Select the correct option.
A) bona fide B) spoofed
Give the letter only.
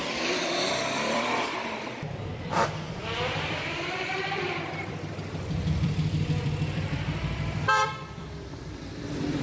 B